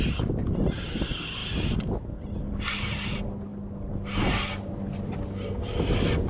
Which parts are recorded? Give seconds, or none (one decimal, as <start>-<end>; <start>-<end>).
0.0-6.3